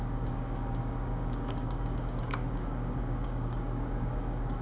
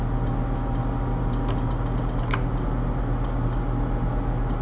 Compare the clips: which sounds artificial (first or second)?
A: first